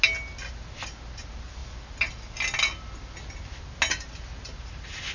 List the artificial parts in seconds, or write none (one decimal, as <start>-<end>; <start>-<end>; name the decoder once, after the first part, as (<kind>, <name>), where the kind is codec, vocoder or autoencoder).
none